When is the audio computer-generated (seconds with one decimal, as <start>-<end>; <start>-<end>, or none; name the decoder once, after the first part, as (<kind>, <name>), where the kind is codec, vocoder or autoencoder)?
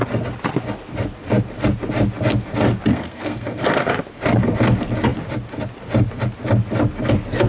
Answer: 2.9-3.9 (codec, SNAC)